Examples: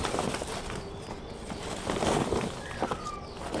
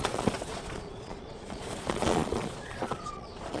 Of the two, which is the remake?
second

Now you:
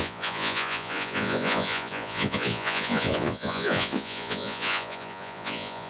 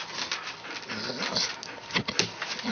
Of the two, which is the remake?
first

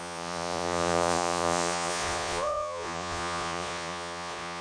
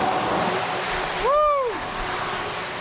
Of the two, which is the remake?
first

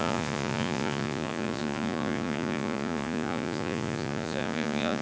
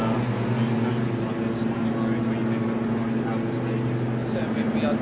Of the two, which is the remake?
first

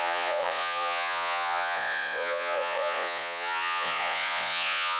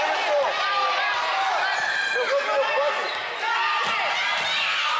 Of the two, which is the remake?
first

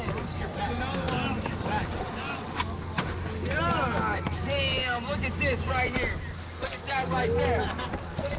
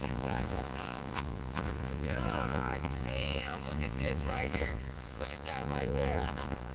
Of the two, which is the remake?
second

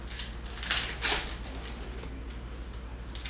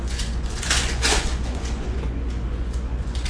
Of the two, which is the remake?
second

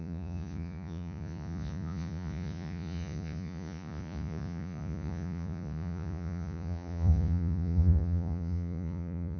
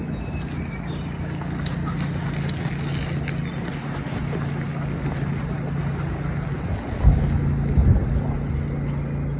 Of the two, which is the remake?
first